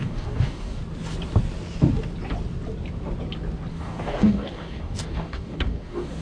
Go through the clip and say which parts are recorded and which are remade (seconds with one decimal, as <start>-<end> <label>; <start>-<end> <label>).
0.0-0.8 remade; 0.8-3.7 recorded; 3.7-6.2 remade